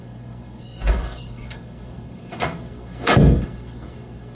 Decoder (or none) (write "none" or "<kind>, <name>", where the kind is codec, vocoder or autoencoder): codec, SNAC